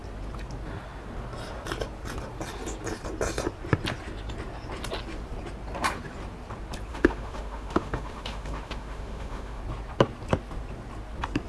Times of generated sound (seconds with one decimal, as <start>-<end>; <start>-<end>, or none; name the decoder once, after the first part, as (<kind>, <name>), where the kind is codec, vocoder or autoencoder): 6.9-9.6 (autoencoder, DAC-VAE)